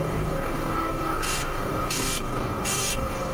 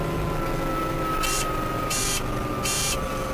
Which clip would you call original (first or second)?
second